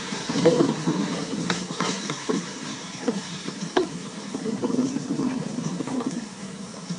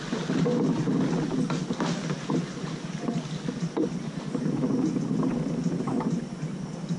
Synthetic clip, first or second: first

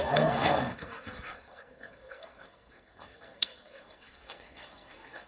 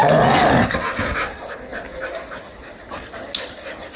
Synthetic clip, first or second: first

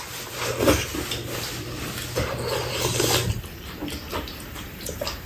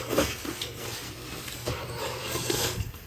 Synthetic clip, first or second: second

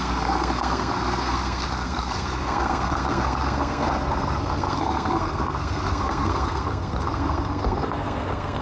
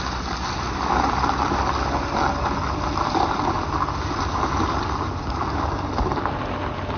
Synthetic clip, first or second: first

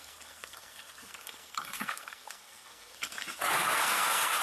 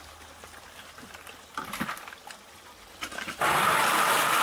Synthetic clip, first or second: first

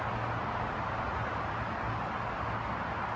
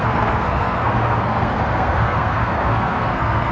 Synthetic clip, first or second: second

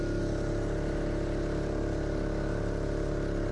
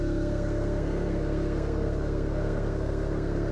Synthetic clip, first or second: second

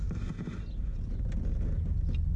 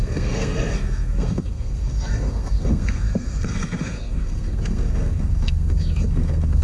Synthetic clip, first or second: second